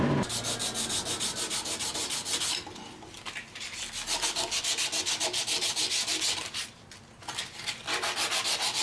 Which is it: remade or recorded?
recorded